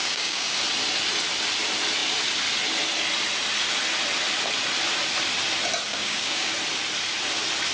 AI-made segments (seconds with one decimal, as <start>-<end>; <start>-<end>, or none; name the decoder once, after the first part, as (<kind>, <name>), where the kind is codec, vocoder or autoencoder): 0.0-0.6 (codec, DAC); 5.9-6.5

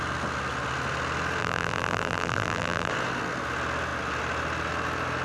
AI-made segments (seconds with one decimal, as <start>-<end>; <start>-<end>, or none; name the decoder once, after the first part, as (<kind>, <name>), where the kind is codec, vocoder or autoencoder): 1.4-2.9 (vocoder, BigVGAN v2)

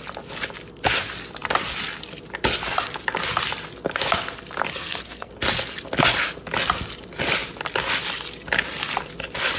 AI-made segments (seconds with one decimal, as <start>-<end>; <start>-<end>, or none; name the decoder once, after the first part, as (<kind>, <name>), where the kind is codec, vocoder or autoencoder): 4.7-5.3 (codec, SNAC)

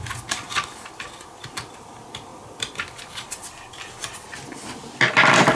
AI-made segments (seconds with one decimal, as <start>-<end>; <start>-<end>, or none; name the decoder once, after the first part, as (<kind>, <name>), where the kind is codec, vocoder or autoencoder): none

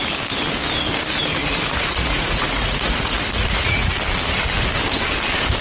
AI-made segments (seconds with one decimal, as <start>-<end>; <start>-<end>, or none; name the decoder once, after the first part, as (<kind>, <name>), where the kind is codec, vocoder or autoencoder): 1.4-3.9 (vocoder, Vocos)

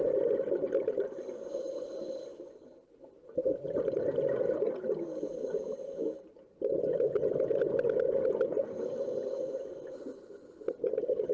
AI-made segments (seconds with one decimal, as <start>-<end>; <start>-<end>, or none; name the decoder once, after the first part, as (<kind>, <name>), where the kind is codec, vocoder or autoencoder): 6.0-6.7 (vocoder, BigVGAN v2)

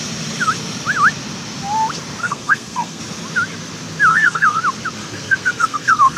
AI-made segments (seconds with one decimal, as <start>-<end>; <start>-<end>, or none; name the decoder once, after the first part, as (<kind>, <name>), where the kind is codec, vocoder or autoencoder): 2.2-3.0 (codec, SNAC); 4.1-4.6; 5.0-6.2

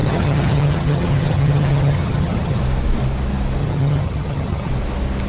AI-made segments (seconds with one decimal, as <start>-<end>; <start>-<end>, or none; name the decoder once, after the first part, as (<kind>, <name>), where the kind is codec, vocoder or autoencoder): 0.0-2.6 (vocoder, HiFi-GAN); 3.6-4.7